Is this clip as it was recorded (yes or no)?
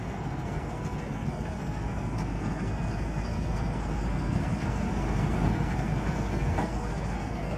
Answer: no